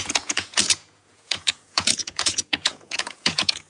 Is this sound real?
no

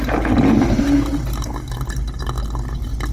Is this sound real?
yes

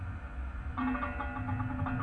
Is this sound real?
yes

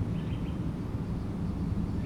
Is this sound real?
yes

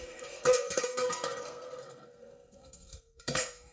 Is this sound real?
no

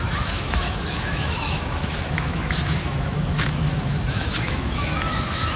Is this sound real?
no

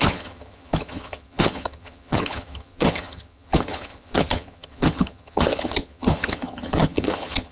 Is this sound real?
no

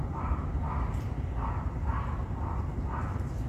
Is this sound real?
yes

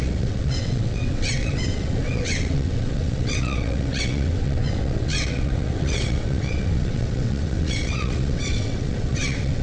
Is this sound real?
no